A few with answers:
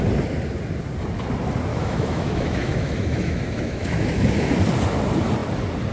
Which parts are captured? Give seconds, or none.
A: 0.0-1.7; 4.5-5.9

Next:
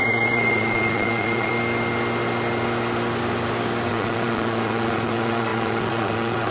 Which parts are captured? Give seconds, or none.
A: 1.5-3.9

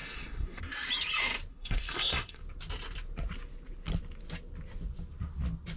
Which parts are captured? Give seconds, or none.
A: 0.6-1.5; 2.4-5.8

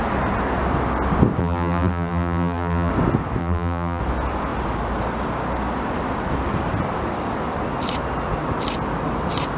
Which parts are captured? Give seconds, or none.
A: 0.0-1.4; 2.9-3.4; 4.0-9.6